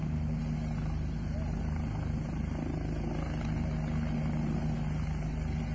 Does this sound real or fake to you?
real